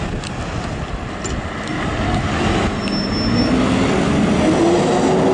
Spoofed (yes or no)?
no